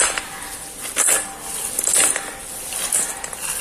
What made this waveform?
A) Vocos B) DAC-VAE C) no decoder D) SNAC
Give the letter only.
C